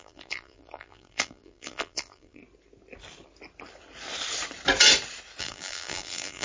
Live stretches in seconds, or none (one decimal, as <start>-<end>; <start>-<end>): 2.4-5.4